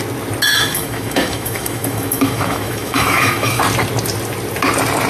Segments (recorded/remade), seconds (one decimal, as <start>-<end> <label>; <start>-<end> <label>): 0.0-0.5 recorded; 0.5-3.6 remade; 3.6-5.1 recorded